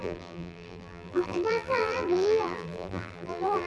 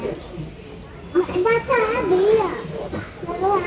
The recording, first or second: second